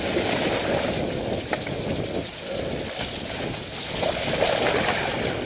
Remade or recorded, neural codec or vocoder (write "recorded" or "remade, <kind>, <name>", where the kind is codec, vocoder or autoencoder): recorded